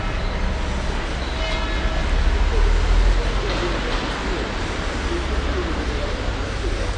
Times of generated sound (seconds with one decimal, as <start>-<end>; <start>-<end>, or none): none